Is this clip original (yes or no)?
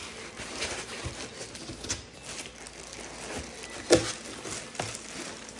yes